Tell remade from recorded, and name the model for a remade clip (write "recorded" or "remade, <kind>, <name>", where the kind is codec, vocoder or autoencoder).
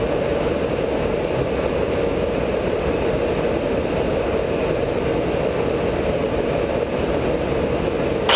recorded